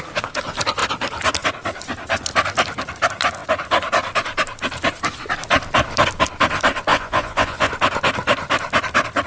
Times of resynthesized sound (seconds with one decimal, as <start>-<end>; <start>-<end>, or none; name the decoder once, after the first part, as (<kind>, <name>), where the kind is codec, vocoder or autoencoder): 6.9-7.7 (vocoder, Vocos)